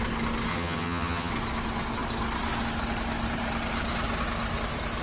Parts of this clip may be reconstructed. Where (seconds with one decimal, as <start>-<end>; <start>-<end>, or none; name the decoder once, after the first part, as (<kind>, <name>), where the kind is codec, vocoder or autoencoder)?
0.5-1.3 (vocoder, HiFi-GAN)